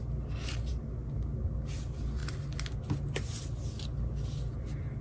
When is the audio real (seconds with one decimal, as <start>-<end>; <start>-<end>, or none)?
0.0-5.0